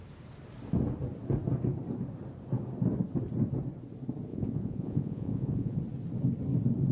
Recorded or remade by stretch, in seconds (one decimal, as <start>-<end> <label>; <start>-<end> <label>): 0.0-4.3 recorded; 4.3-5.8 remade; 5.8-6.9 recorded